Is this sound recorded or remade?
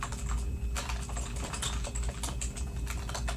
recorded